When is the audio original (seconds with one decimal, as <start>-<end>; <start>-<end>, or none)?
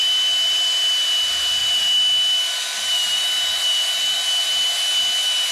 0.0-5.5